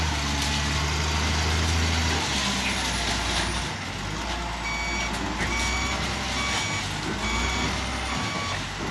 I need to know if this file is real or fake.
real